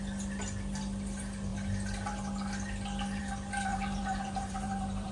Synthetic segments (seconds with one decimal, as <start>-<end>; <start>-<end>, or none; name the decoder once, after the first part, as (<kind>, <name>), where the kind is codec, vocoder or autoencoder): 3.7-5.1 (vocoder, BigVGAN v2)